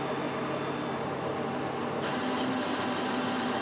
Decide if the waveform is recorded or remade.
recorded